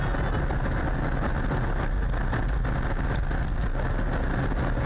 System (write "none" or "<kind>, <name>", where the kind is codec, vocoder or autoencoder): none